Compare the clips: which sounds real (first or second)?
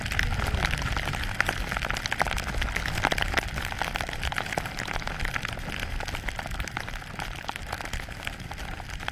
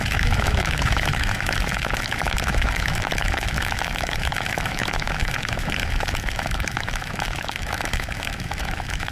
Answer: first